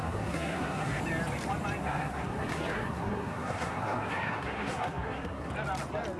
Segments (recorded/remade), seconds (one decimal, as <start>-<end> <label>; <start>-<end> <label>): 0.0-1.0 remade; 1.0-1.8 recorded; 1.8-5.5 remade; 5.5-6.2 recorded